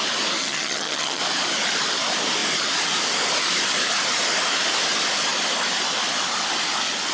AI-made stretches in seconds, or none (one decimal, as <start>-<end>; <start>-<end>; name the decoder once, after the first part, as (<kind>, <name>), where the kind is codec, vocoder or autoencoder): 0.4-1.2 (vocoder, HiFi-GAN)